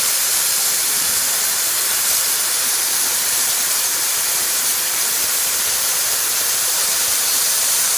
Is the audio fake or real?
fake